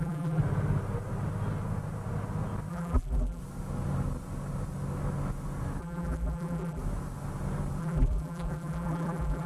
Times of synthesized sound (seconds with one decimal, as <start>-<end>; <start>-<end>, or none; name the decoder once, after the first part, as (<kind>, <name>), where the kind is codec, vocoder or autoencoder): 0.0-0.4 (vocoder, BigVGAN v2); 2.7-3.4; 5.8-6.8; 7.8-9.5